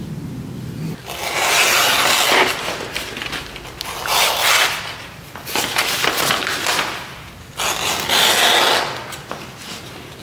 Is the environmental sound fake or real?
real